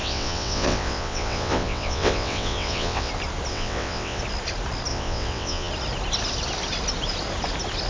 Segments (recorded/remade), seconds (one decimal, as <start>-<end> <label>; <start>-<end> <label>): 0.0-3.1 remade; 3.1-3.5 recorded; 3.5-4.2 remade; 4.2-4.9 recorded; 4.9-5.7 remade; 5.7-7.9 recorded